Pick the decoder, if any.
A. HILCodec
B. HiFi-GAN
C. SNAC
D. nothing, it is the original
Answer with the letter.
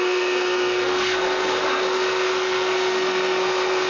C